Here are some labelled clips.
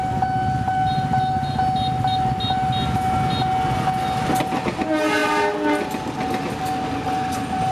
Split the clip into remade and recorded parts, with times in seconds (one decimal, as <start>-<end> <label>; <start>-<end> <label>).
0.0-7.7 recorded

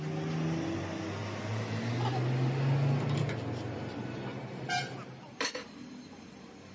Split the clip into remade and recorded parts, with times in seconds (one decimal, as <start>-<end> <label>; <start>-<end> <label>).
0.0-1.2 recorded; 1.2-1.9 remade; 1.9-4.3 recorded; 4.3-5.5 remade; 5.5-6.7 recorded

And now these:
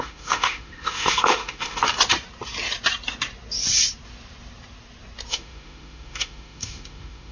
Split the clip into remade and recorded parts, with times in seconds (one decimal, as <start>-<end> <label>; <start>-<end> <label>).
0.0-1.8 remade; 1.8-5.3 recorded; 5.3-7.3 remade